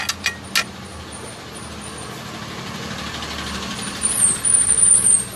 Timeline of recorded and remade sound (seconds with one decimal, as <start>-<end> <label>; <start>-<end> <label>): 0.0-5.4 recorded